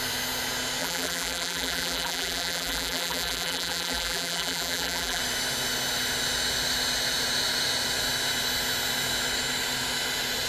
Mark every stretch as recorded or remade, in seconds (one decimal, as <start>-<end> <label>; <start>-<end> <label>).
0.0-0.8 recorded; 0.8-5.2 remade; 5.2-10.5 recorded